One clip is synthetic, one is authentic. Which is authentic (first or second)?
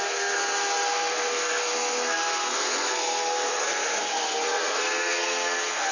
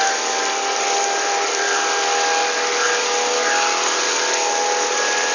second